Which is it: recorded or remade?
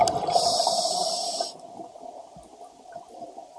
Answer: recorded